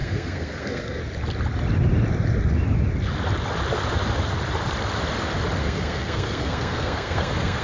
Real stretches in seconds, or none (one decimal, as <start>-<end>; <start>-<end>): 1.0-5.6